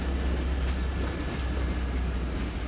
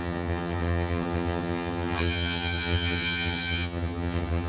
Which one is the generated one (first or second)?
second